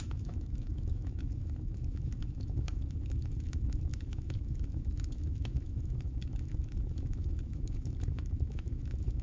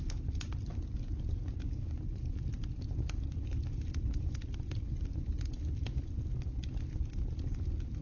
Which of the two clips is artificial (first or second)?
first